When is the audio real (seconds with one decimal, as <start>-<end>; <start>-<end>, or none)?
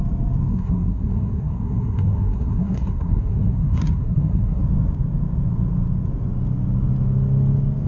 0.0-0.5; 4.6-7.9